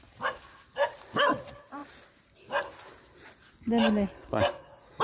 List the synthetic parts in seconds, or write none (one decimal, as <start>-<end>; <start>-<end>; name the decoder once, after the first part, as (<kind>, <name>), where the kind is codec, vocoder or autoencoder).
none